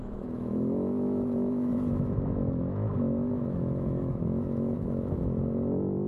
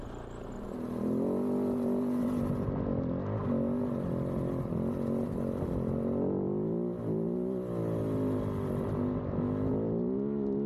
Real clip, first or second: second